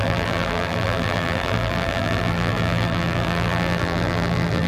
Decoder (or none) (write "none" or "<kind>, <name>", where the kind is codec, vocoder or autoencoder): vocoder, BigVGAN v2